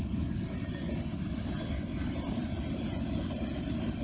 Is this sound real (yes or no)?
yes